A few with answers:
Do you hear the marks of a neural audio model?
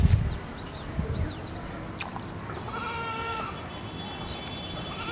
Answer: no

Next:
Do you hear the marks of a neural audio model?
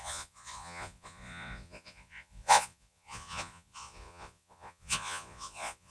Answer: yes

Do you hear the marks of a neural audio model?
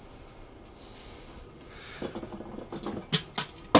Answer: no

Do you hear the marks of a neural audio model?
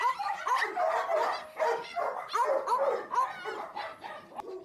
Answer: no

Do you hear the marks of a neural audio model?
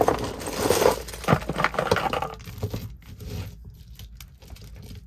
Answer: no